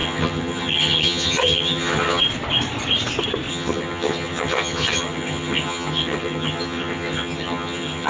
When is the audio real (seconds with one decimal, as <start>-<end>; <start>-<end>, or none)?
2.2-3.5